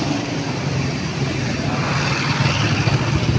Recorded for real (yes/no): yes